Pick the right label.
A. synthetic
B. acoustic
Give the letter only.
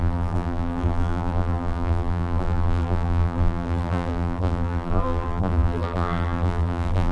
A